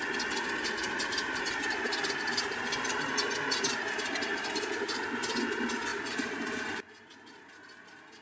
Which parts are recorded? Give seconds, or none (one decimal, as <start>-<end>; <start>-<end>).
0.0-0.8; 4.8-5.9; 7.5-8.2